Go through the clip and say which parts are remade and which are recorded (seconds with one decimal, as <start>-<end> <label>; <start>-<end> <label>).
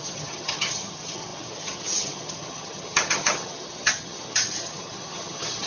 0.0-5.7 remade